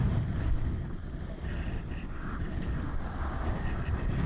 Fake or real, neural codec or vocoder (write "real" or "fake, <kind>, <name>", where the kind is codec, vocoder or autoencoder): real